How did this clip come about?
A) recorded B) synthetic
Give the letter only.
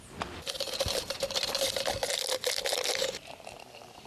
A